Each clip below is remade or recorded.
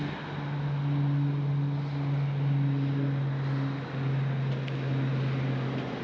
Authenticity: recorded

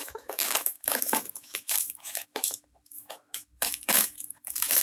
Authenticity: remade